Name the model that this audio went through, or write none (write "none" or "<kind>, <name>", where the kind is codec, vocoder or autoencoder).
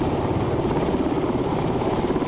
none